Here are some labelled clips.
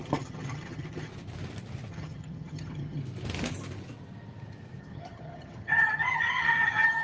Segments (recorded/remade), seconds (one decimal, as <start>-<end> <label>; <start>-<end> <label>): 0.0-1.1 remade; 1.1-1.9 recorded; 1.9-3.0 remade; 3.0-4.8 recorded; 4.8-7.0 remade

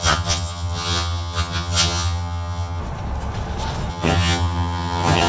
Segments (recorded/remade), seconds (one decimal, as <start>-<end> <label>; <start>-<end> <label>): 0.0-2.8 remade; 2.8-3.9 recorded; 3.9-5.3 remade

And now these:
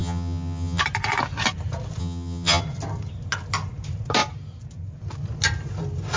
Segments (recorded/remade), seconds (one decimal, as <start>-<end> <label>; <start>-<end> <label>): 0.0-0.8 remade; 0.8-2.0 recorded; 2.0-2.6 remade; 2.6-6.2 recorded

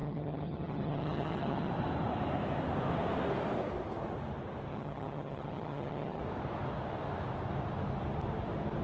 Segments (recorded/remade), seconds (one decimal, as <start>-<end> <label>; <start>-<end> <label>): 0.0-1.7 remade; 1.7-4.7 recorded; 4.7-6.2 remade; 6.2-8.8 recorded

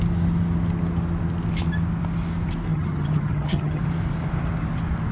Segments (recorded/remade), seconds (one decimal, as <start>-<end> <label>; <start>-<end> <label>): 0.0-2.7 recorded; 2.7-3.8 remade; 3.8-5.1 recorded

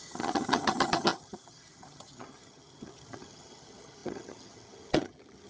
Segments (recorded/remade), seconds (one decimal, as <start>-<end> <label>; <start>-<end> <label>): 0.0-5.5 remade

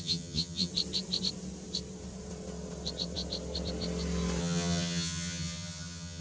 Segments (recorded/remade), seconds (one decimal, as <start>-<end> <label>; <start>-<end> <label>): 0.0-0.7 remade; 0.7-4.4 recorded; 4.4-6.2 remade